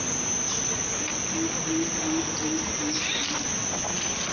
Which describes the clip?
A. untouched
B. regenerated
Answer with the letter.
A